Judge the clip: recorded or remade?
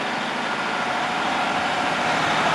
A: recorded